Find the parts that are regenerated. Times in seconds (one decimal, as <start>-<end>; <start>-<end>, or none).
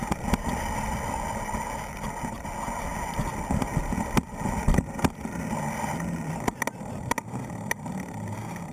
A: none